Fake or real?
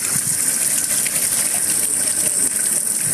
real